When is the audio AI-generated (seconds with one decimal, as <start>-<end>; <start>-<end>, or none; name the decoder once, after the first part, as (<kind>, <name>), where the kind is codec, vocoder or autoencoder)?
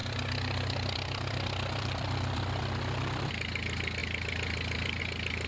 0.0-3.3 (vocoder, BigVGAN v2); 4.0-5.0